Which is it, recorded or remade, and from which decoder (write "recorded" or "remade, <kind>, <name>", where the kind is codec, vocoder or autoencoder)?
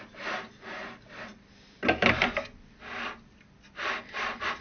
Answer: recorded